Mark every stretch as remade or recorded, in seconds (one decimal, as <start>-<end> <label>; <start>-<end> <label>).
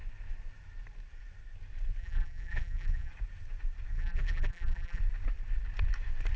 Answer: 0.0-2.0 recorded; 2.0-3.1 remade; 3.1-3.9 recorded; 3.9-5.0 remade; 5.0-6.4 recorded